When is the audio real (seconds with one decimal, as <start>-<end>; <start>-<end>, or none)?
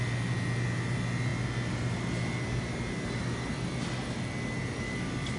0.0-5.4